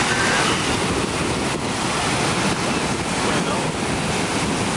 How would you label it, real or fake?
real